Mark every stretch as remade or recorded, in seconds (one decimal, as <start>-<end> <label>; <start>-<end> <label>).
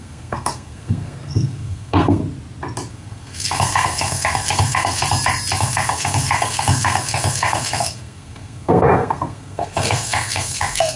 0.0-2.2 remade; 2.2-2.9 recorded; 2.9-5.0 remade; 5.0-5.6 recorded; 5.6-11.0 remade